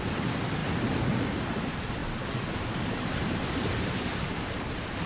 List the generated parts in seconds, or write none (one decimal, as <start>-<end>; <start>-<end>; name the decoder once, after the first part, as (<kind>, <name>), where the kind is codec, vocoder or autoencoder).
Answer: 2.0-5.1 (vocoder, BigVGAN v2)